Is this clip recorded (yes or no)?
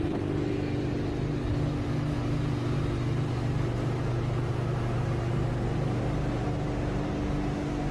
yes